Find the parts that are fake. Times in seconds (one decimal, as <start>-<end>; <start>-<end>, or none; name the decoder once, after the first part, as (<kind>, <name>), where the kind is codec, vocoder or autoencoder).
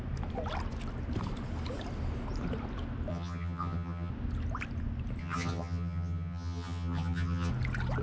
3.1-4.1 (vocoder, HiFi-GAN); 5.2-7.5